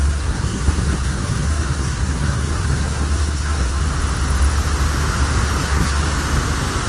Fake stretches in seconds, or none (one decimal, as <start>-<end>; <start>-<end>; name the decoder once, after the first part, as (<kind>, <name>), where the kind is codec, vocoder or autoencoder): 0.0-3.8 (codec, SNAC); 5.6-6.0